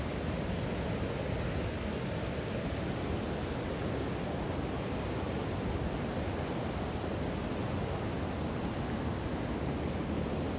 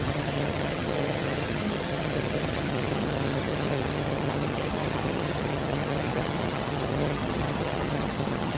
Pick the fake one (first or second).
second